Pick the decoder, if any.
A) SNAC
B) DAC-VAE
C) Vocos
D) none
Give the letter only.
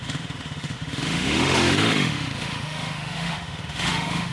B